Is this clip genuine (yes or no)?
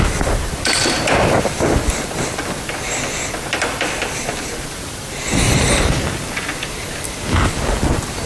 yes